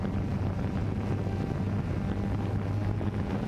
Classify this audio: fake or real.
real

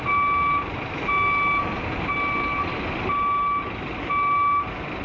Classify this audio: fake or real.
real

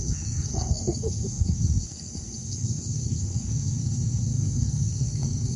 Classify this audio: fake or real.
fake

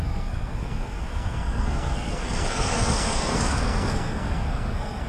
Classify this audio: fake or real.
fake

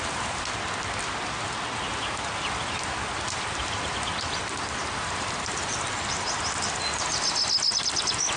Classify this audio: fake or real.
real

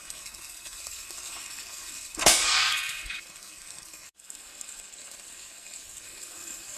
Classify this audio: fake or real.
fake